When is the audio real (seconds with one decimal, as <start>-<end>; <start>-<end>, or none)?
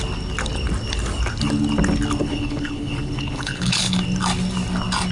0.0-2.2; 3.8-5.1